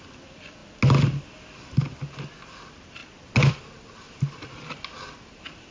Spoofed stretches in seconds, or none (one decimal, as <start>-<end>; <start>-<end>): none